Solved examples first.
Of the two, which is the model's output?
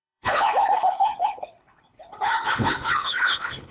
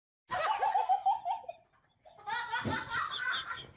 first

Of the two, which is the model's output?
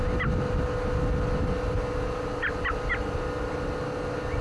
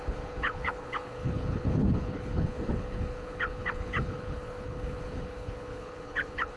second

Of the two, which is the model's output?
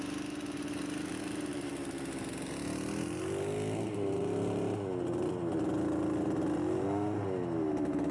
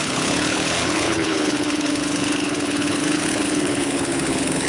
second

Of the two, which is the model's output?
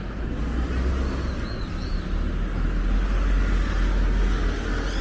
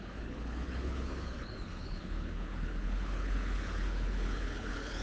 second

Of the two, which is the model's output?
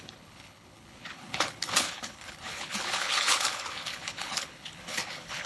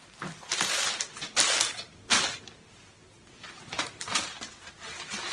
first